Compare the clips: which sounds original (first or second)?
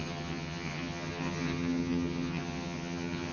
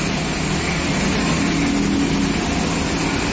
second